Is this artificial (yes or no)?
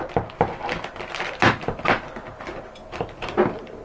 no